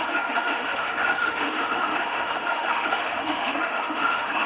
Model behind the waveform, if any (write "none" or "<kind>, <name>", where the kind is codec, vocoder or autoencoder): autoencoder, DAC-VAE